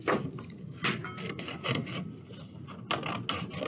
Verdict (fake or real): real